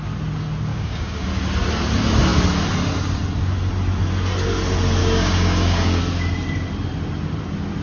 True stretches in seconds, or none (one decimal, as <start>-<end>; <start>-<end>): 0.0-0.7; 1.3-5.0; 6.0-7.8